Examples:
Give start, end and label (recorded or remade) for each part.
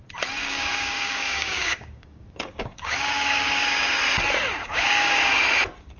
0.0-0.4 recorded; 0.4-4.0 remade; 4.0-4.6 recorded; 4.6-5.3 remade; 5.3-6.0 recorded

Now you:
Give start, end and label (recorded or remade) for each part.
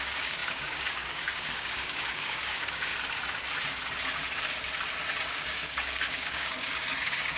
0.0-2.9 remade; 2.9-5.3 recorded; 5.3-7.4 remade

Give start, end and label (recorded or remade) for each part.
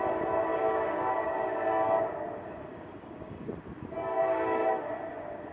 0.0-0.5 recorded; 0.5-2.0 remade; 2.0-2.7 recorded; 2.7-3.5 remade; 3.5-4.0 recorded; 4.0-4.7 remade; 4.7-5.5 recorded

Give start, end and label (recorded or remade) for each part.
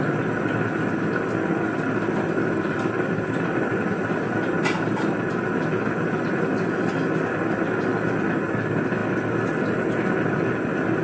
0.0-11.0 recorded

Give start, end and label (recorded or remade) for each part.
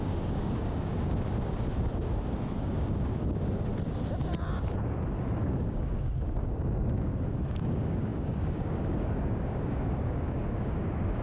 0.0-3.7 remade; 3.7-5.3 recorded; 5.3-11.2 remade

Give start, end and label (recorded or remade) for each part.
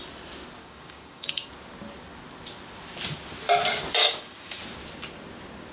0.0-0.6 recorded; 0.6-1.5 remade; 1.5-4.0 recorded; 4.0-4.6 remade; 4.6-5.7 recorded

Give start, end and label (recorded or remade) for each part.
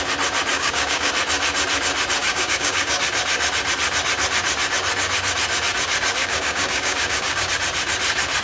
0.0-0.5 recorded; 0.5-1.1 remade; 1.1-2.2 recorded; 2.2-3.0 remade; 3.0-6.2 recorded; 6.2-7.5 remade; 7.5-8.4 recorded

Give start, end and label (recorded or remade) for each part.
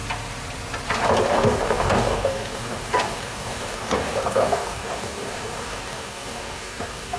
0.0-1.3 recorded; 1.3-7.2 remade